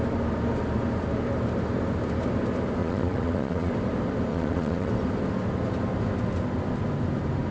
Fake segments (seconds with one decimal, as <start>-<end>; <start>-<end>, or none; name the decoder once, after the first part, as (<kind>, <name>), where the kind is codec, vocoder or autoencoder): 2.8-3.7 (vocoder, Vocos); 4.3-4.9